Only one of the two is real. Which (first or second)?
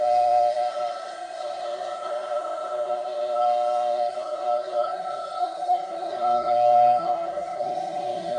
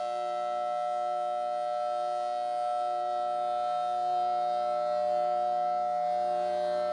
second